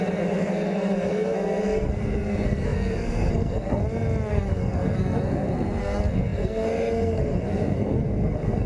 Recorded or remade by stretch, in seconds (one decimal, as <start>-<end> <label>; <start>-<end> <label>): 0.0-3.8 remade; 3.8-4.3 recorded; 4.3-8.7 remade